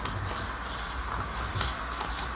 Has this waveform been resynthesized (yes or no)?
no